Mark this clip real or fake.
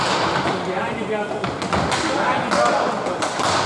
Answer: real